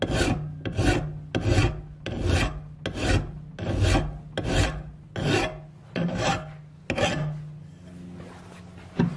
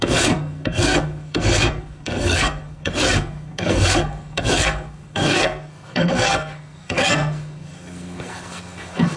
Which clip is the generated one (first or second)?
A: second